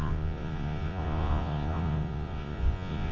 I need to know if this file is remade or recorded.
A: remade